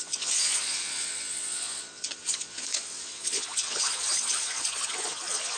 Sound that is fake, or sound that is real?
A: fake